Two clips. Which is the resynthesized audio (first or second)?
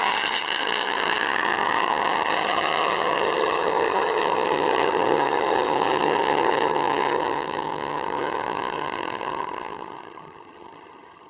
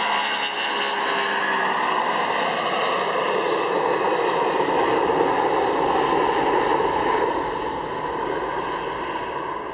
first